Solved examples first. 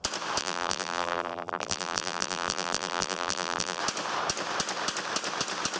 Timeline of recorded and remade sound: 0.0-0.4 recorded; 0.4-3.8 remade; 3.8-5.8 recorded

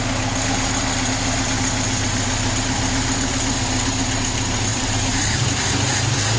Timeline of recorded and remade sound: 0.0-4.7 recorded; 4.7-5.7 remade; 5.7-6.4 recorded

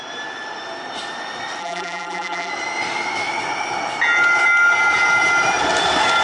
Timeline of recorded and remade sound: 0.0-1.6 recorded; 1.6-2.5 remade; 2.5-6.2 recorded

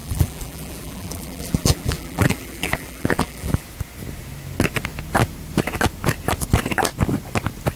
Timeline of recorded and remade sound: 0.0-3.6 remade; 3.6-7.8 recorded

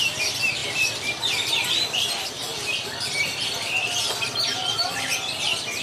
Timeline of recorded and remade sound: 0.0-0.6 recorded; 0.6-2.1 remade; 2.1-2.5 recorded; 2.5-4.3 remade; 4.3-5.8 recorded